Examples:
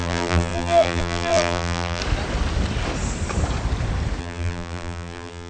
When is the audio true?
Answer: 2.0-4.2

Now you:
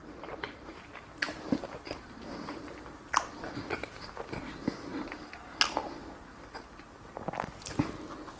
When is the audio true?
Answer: 3.1-4.9; 5.5-8.4

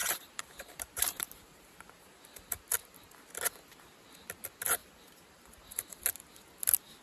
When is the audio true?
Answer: 2.6-4.8; 6.0-7.0

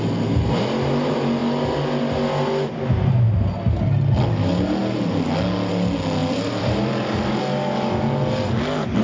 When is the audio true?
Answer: 0.0-6.2; 7.4-9.0

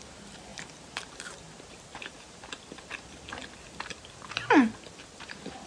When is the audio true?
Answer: 3.4-5.7